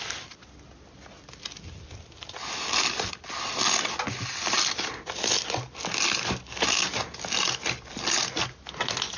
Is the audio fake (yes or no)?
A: no